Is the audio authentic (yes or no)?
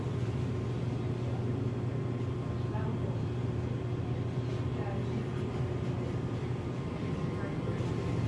no